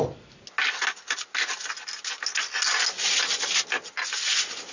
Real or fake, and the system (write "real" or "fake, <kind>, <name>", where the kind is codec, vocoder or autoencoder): real